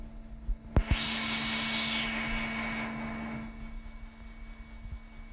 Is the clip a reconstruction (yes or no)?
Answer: no